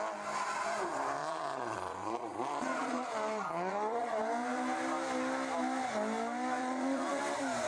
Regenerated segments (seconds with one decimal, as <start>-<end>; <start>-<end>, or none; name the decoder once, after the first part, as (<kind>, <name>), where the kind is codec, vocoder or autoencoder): 1.2-4.2 (vocoder, Vocos); 6.6-7.2